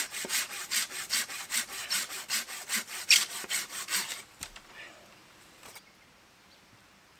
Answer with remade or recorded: remade